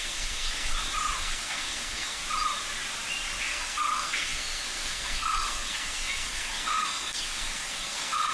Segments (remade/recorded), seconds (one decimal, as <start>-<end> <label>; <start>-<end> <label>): 0.0-0.7 remade; 0.7-1.2 recorded; 1.2-2.2 remade; 2.2-3.4 recorded; 3.4-8.3 remade